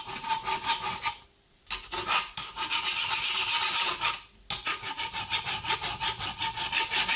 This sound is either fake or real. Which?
real